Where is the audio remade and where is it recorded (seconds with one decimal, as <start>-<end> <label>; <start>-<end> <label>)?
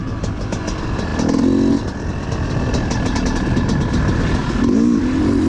0.0-5.5 recorded